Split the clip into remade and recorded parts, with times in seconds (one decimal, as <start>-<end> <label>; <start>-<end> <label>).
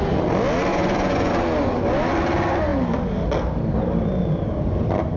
0.0-0.7 recorded; 0.7-1.3 remade; 1.3-5.2 recorded